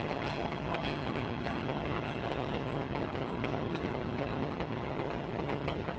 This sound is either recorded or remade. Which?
remade